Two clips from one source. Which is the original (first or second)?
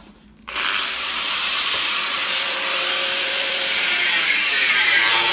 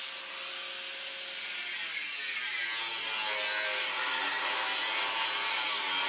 second